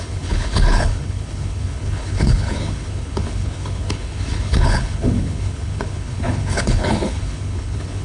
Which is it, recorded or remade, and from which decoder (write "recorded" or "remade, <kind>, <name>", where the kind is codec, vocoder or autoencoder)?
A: remade, codec, HILCodec